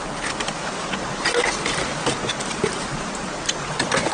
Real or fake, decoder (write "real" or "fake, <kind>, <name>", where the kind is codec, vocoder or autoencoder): real